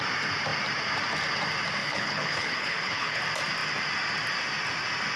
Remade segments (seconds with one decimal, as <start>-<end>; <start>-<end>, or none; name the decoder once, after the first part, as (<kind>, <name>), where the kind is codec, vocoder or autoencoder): 1.8-3.2 (codec, HILCodec)

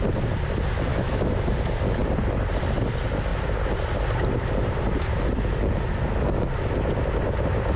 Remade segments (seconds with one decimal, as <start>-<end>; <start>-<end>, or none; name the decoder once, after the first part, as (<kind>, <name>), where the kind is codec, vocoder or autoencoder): 0.9-1.4 (autoencoder, DAC-VAE)